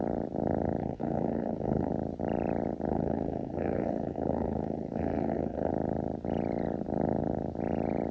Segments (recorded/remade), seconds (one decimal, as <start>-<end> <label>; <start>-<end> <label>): 0.0-0.8 recorded; 0.8-1.9 remade; 1.9-2.9 recorded; 2.9-5.7 remade; 5.7-8.1 recorded